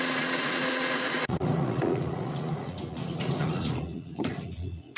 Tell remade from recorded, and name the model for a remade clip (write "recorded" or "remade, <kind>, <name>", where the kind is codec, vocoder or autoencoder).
remade, vocoder, Vocos